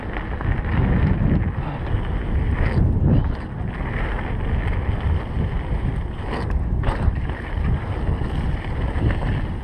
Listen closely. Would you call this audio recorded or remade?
recorded